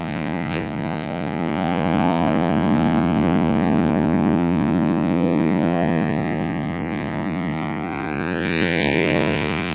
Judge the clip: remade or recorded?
remade